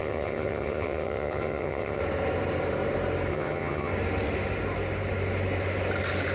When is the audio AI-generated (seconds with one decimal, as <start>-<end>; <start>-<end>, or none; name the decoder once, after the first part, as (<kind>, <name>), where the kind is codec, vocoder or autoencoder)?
0.0-2.0 (vocoder, HiFi-GAN); 3.3-3.9